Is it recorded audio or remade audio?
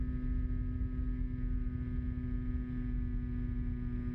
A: recorded